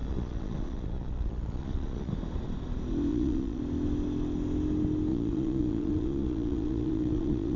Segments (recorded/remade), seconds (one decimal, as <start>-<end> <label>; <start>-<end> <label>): 0.0-2.1 remade; 2.1-3.1 recorded; 3.1-3.6 remade; 3.6-5.1 recorded; 5.1-7.6 remade